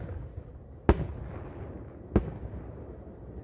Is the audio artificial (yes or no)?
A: no